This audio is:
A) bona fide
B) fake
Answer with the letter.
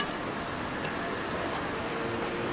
A